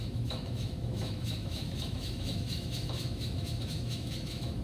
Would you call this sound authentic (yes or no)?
no